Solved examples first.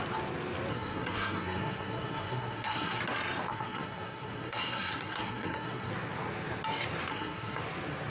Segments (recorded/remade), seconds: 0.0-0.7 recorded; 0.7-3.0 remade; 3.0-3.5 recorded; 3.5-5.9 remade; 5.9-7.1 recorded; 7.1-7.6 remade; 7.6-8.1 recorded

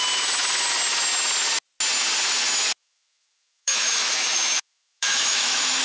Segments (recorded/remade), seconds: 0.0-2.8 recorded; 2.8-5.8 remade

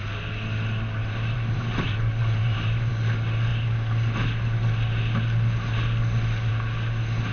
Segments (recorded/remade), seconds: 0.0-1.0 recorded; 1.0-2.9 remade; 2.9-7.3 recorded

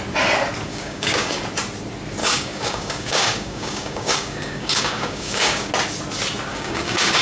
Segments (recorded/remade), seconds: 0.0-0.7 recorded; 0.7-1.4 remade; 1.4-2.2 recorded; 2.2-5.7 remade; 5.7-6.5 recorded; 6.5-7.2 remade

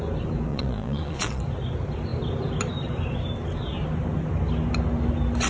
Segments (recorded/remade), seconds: 0.0-0.5 recorded; 0.5-1.4 remade; 1.4-5.5 recorded

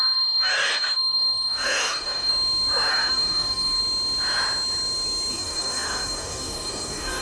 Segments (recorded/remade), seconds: 0.0-2.3 remade; 2.3-2.9 recorded; 2.9-3.8 remade; 3.8-5.3 recorded; 5.3-7.2 remade